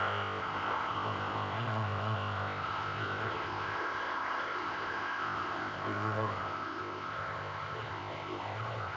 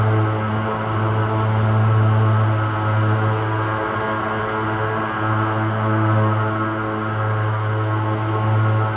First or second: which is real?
second